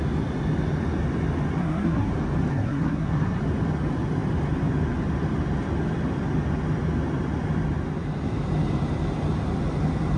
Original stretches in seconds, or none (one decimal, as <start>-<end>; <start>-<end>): 0.0-1.6; 2.1-2.5; 3.4-10.2